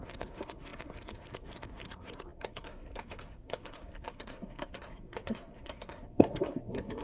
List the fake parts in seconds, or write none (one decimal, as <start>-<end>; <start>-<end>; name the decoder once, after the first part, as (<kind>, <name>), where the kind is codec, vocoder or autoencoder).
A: 0.0-7.0 (codec, SNAC)